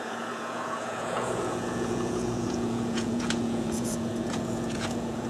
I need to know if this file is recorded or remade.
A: remade